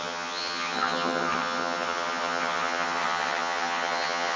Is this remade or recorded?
remade